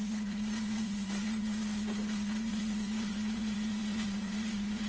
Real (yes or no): no